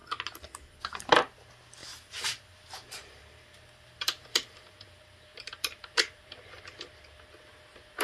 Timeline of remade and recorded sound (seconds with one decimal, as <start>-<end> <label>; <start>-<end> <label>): 0.0-1.8 recorded; 1.8-6.6 remade; 6.6-8.0 recorded